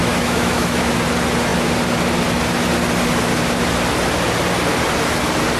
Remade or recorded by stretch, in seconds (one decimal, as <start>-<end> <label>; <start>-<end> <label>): 0.0-0.9 remade; 0.9-5.6 recorded